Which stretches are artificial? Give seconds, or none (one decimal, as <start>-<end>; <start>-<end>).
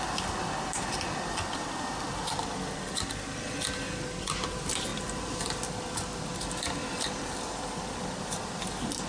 none